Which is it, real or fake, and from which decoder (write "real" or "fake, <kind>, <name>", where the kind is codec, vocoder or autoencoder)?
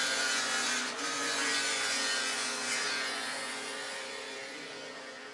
fake, vocoder, Vocos